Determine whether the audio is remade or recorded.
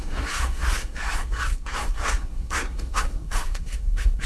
remade